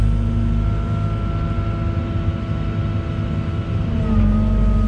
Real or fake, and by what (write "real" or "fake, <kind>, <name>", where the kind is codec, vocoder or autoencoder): real